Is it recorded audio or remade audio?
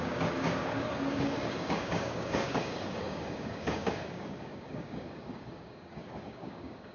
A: remade